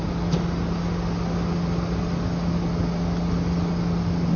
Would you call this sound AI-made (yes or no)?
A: no